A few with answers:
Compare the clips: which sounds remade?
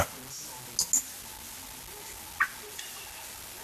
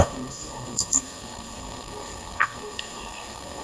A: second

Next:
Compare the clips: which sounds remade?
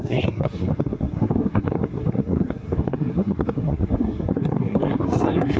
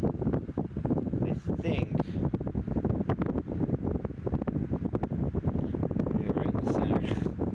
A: first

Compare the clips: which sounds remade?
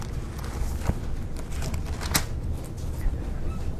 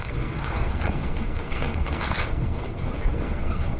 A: second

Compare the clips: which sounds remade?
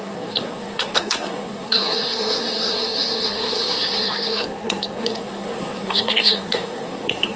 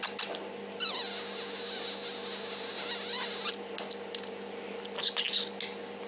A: first